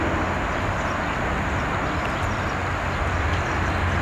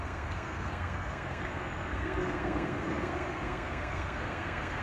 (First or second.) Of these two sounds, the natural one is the first